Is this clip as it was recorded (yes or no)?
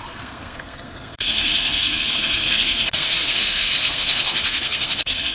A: no